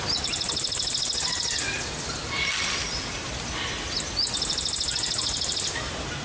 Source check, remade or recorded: recorded